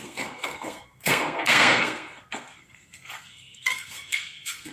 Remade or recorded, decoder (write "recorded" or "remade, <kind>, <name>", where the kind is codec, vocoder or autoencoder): remade, codec, SNAC